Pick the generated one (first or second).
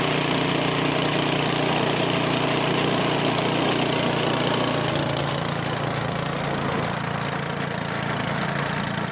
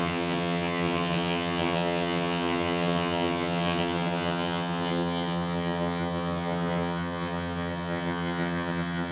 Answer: second